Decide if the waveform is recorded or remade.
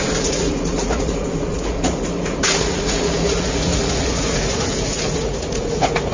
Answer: remade